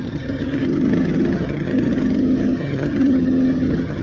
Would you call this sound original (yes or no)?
no